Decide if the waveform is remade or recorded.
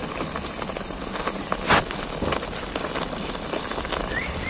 recorded